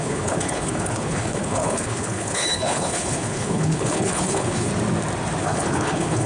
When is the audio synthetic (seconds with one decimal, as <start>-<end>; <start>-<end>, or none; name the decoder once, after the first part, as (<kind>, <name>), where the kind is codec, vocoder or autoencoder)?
0.0-4.7 (codec, HILCodec); 5.4-6.3